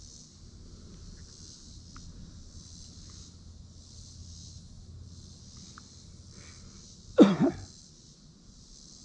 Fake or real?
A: real